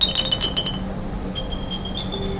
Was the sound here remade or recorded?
recorded